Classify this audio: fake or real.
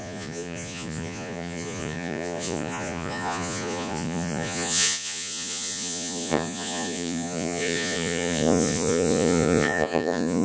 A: fake